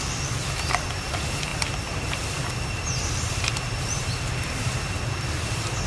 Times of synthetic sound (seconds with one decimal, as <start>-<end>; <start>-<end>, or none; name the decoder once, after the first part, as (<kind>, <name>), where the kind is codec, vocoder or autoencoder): 0.0-5.9 (vocoder, BigVGAN v2)